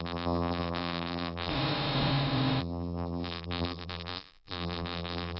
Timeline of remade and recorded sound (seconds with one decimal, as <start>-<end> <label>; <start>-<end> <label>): 0.0-1.5 remade; 1.5-2.6 recorded; 2.6-5.4 remade